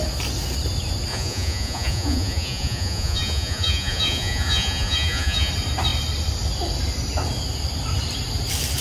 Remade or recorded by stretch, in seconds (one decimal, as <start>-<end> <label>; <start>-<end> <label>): 0.0-1.1 recorded; 1.1-5.5 remade; 5.5-8.8 recorded